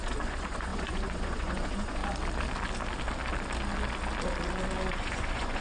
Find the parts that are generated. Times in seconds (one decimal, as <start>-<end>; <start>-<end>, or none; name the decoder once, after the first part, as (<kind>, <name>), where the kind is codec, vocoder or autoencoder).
0.0-2.0 (vocoder, Vocos); 4.9-5.6